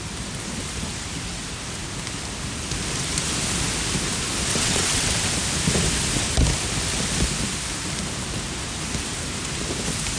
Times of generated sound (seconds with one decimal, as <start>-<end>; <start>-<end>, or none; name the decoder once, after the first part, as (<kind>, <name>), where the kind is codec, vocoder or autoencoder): 4.5-5.1 (vocoder, WaveNeXt)